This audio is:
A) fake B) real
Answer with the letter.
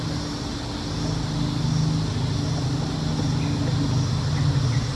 B